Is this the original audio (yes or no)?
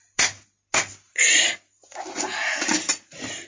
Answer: yes